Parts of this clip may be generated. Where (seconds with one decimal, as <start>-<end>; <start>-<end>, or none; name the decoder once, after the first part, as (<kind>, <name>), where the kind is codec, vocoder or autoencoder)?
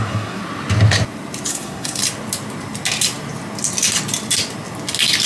0.0-0.4 (codec, SNAC); 1.5-2.0